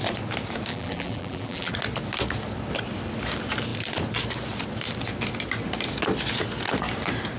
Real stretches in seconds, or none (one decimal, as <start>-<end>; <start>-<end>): 0.0-0.7; 1.7-7.4

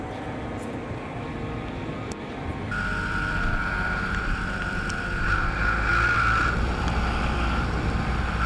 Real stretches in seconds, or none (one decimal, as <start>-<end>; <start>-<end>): none

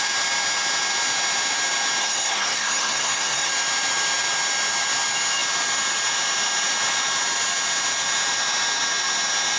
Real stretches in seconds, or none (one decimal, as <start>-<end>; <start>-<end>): 0.0-2.0; 3.5-9.6

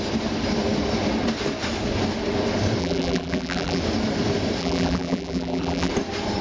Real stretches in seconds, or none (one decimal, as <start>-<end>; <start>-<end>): 0.0-2.8; 3.8-4.6; 5.9-6.4

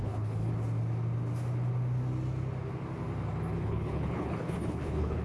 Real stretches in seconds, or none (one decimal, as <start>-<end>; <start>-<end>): 0.5-3.6